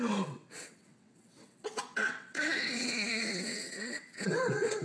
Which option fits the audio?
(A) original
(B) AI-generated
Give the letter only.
B